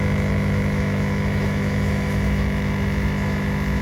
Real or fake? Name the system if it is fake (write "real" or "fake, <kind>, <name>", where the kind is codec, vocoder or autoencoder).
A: fake, autoencoder, DAC-VAE